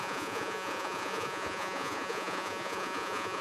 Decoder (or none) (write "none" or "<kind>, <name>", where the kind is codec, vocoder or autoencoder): vocoder, Vocos